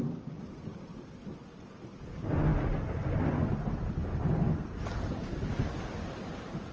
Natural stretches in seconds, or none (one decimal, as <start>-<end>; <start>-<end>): 0.0-6.7